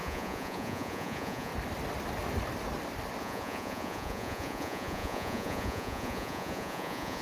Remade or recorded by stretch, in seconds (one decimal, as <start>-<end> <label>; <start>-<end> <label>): 0.0-1.5 remade; 1.5-3.2 recorded; 3.2-7.2 remade